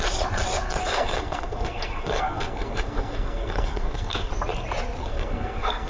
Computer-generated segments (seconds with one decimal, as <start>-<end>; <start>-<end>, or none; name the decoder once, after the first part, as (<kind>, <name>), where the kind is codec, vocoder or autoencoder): 0.8-4.3 (codec, SNAC); 5.0-5.9